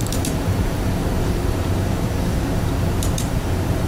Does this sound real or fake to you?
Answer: fake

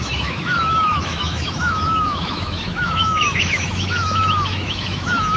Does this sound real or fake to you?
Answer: fake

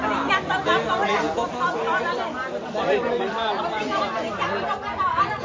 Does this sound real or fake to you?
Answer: real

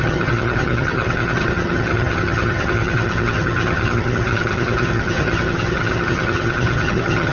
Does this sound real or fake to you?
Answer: fake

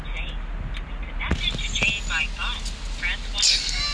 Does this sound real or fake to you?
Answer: real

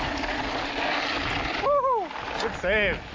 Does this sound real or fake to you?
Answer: real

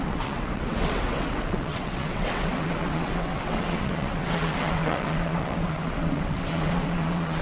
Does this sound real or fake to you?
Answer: fake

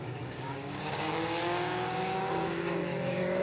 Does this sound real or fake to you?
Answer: fake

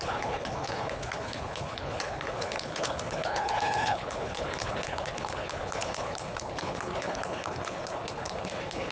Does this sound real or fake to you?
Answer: fake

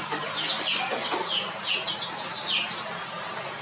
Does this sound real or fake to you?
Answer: real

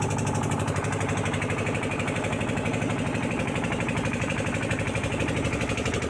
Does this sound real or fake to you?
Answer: fake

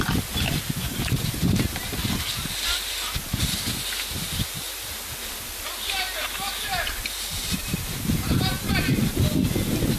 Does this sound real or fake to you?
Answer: real